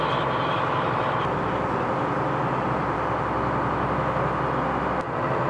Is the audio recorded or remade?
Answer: recorded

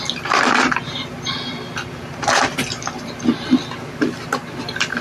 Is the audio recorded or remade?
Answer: recorded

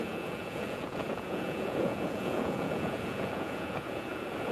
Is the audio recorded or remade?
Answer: remade